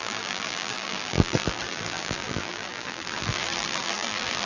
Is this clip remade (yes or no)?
yes